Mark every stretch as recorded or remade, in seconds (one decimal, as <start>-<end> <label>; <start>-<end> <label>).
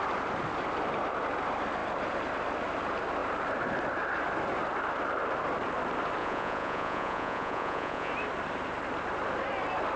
0.0-6.2 recorded; 6.2-8.1 remade; 8.1-10.0 recorded